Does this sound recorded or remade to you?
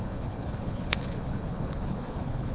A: remade